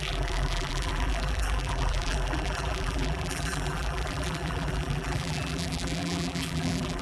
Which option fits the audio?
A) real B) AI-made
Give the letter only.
B